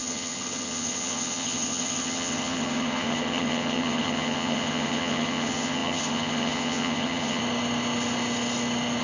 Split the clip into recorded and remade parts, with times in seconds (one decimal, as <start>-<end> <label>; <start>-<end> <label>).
0.0-7.4 remade; 7.4-9.0 recorded